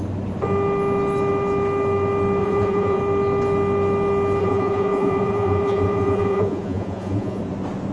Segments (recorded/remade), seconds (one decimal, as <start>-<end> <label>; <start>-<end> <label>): 0.0-2.4 recorded; 2.4-3.0 remade; 3.0-4.4 recorded; 4.4-7.4 remade; 7.4-7.9 recorded